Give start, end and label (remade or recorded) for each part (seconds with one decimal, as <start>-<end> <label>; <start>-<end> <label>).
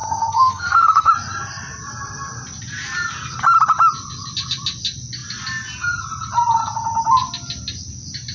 0.0-1.1 remade; 1.1-8.3 recorded